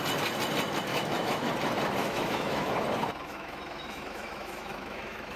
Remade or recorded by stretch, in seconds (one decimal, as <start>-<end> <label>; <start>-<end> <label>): 0.0-0.9 recorded; 0.9-1.5 remade; 1.5-2.0 recorded; 2.0-2.7 remade; 2.7-3.3 recorded; 3.3-5.4 remade